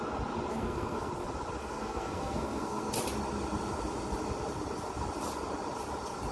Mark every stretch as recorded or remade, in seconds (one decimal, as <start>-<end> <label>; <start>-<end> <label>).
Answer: 0.0-0.5 recorded; 0.5-1.1 remade; 1.1-1.6 recorded; 1.6-2.9 remade; 2.9-6.3 recorded